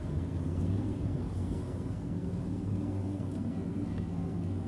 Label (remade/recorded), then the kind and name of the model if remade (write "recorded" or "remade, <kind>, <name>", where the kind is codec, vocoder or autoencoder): remade, codec, SNAC